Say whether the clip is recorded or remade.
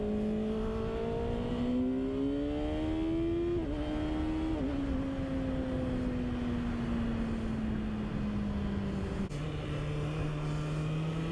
recorded